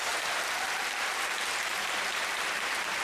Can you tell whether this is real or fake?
real